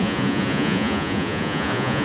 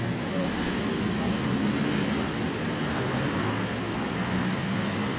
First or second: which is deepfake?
first